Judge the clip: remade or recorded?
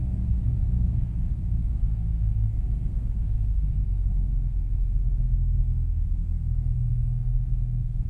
remade